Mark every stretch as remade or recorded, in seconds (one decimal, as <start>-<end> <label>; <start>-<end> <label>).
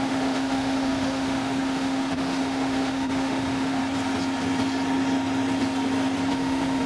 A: 0.0-3.8 remade; 3.8-6.3 recorded; 6.3-6.9 remade